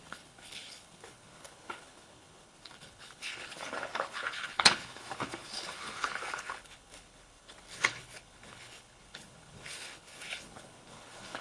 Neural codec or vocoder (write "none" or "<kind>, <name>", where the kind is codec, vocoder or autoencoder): codec, HILCodec